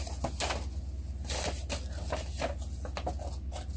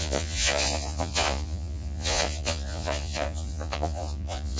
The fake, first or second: second